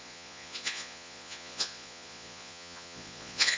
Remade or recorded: remade